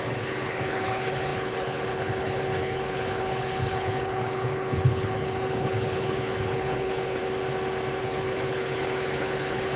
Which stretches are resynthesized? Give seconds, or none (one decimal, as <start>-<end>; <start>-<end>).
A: 0.0-7.2; 8.0-9.8